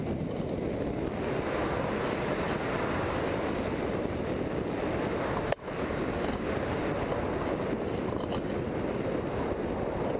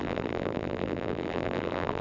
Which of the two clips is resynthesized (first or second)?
second